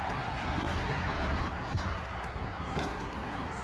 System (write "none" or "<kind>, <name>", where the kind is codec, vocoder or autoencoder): codec, SNAC